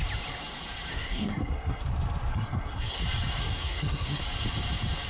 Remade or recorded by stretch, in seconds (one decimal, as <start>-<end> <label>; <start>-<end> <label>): 0.0-0.9 recorded; 0.9-1.8 remade; 1.8-2.3 recorded; 2.3-3.0 remade; 3.0-3.4 recorded; 3.4-4.2 remade; 4.2-5.1 recorded